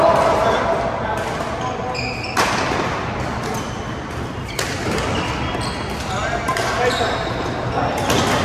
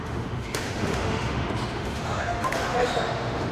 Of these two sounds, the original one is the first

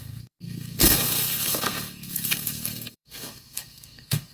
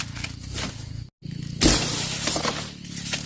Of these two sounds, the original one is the second